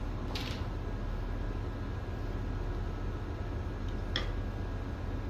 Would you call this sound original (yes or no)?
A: yes